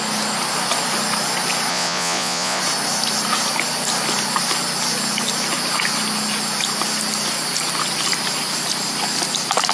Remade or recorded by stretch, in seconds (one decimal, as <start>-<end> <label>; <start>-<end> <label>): 0.0-1.7 recorded; 1.7-2.6 remade; 2.6-9.7 recorded